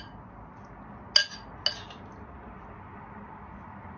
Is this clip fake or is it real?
real